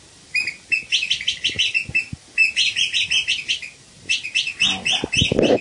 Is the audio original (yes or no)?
yes